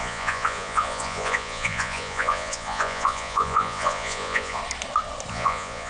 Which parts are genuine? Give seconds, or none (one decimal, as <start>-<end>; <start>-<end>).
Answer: 4.6-5.3